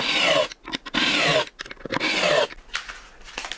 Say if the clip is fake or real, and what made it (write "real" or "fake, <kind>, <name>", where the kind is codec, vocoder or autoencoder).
real